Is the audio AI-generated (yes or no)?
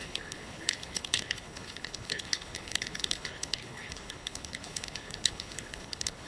yes